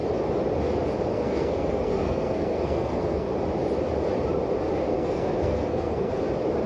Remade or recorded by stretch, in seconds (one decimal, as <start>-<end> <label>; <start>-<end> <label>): 0.0-1.1 recorded; 1.1-3.3 remade; 3.3-4.9 recorded; 4.9-6.2 remade; 6.2-6.7 recorded